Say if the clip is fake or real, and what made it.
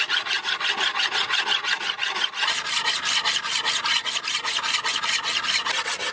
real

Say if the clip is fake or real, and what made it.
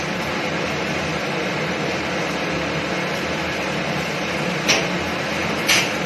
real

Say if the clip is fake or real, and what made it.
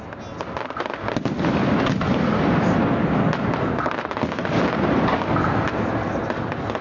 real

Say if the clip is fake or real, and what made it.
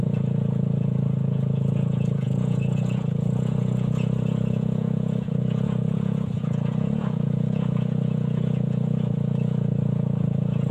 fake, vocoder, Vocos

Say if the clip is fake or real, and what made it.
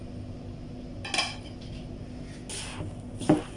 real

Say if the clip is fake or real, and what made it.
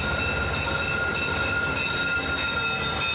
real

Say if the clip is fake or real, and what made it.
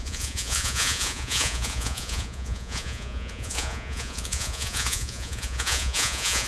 fake, vocoder, Vocos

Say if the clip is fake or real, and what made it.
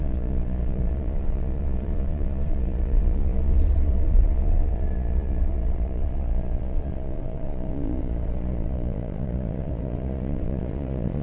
fake, vocoder, Vocos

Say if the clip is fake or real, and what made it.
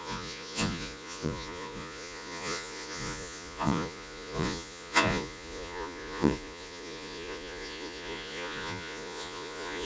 fake, vocoder, Vocos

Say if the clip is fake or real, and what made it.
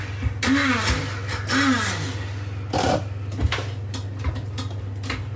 real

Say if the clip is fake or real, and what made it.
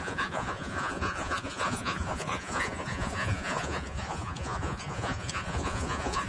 fake, vocoder, Vocos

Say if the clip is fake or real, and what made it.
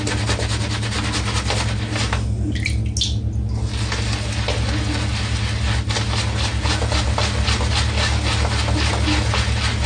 real